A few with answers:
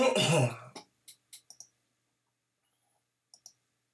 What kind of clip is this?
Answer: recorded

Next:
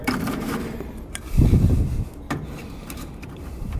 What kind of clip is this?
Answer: remade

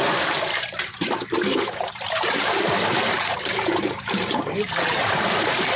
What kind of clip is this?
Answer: remade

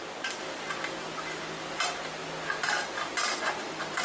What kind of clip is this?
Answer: recorded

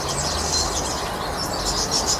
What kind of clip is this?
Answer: recorded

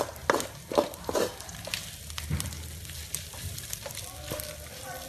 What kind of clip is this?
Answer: recorded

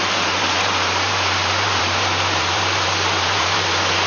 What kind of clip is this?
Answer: remade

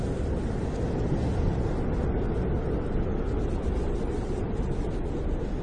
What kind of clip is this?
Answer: recorded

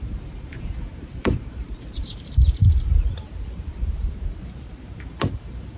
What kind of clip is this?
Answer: remade